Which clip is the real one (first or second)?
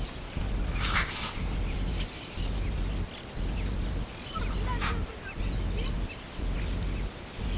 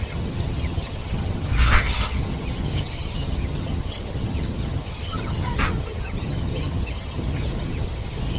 first